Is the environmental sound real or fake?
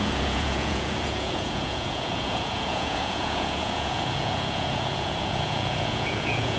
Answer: fake